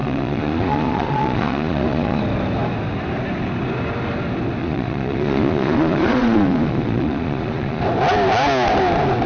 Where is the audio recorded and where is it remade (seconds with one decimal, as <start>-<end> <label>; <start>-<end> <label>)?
0.0-2.2 remade; 2.2-4.6 recorded; 4.6-7.8 remade; 7.8-9.3 recorded

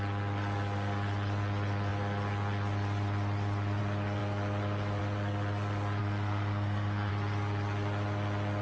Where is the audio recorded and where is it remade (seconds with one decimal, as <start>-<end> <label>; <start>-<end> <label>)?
0.0-6.0 recorded; 6.0-7.1 remade; 7.1-8.6 recorded

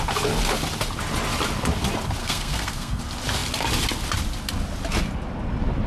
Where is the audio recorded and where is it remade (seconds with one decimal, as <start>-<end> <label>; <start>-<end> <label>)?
0.0-2.2 recorded; 2.2-3.0 remade; 3.0-5.9 recorded

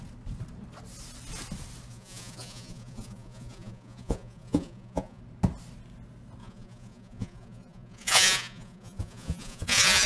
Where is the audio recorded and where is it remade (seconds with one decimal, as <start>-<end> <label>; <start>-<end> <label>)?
0.0-1.9 recorded; 1.9-5.2 remade; 5.2-6.4 recorded; 6.4-10.1 remade

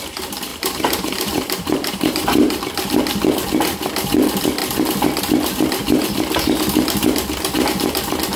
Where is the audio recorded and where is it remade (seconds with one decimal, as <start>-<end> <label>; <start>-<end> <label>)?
0.0-0.5 recorded; 0.5-2.6 remade; 2.6-8.4 recorded

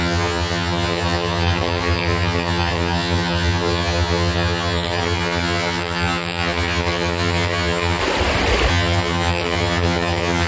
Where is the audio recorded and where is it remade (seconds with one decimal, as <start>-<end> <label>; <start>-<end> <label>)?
0.0-8.0 remade; 8.0-8.7 recorded; 8.7-10.5 remade